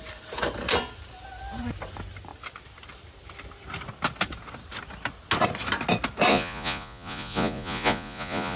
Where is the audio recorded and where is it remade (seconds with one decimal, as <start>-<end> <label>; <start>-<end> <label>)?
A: 0.0-6.3 recorded; 6.3-8.6 remade